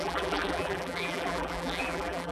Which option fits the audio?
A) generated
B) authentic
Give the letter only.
A